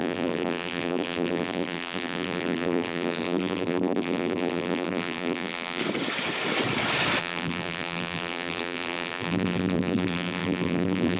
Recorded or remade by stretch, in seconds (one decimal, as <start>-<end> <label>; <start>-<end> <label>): 0.0-5.8 remade; 5.8-7.2 recorded; 7.2-11.2 remade

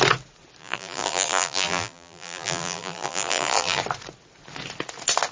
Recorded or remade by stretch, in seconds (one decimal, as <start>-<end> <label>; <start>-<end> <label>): 0.0-0.6 recorded; 0.6-3.8 remade; 3.8-5.3 recorded

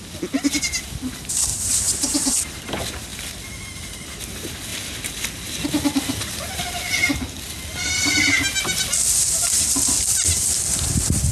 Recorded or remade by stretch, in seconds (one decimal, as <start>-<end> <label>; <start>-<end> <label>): 0.0-1.5 recorded; 1.5-2.4 remade; 2.4-11.3 recorded

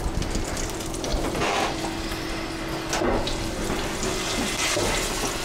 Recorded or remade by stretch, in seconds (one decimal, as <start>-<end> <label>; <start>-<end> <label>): 0.0-5.4 recorded

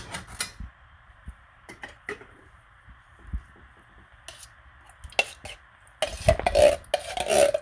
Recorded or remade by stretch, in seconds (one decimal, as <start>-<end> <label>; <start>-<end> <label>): 0.0-0.5 recorded; 0.5-3.6 remade; 3.6-7.6 recorded

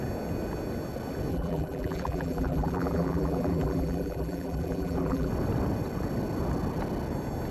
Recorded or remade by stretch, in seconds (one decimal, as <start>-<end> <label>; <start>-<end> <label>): 0.0-1.3 recorded; 1.3-5.3 remade; 5.3-7.5 recorded

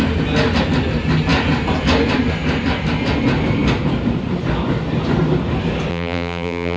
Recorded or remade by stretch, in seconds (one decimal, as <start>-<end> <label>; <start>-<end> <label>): 0.0-5.9 recorded; 5.9-6.8 remade